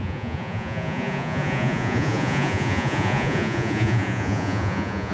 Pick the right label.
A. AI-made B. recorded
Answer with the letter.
A